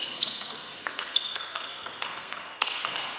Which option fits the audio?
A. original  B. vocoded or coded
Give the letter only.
B